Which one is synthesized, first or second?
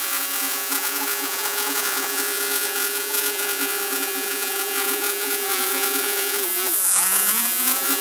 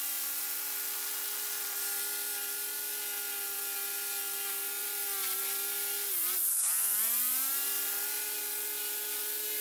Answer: first